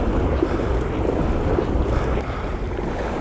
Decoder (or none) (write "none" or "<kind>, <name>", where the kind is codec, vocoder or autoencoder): none